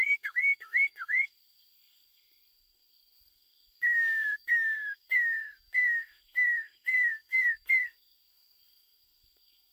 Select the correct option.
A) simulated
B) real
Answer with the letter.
A